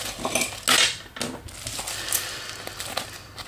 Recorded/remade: recorded